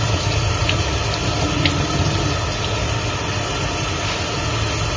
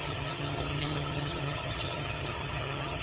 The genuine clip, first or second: first